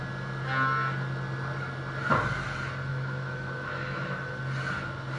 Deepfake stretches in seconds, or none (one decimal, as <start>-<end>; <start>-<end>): 2.9-4.4